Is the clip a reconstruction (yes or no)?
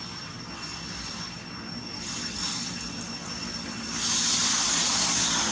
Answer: no